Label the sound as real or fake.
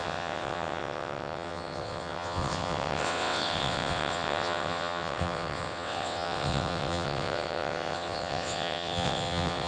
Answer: fake